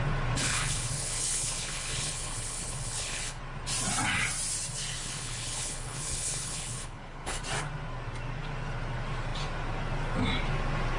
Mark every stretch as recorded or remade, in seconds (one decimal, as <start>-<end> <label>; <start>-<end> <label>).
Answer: 0.0-0.4 recorded; 0.4-3.4 remade; 3.4-5.0 recorded; 5.0-7.4 remade; 7.4-11.0 recorded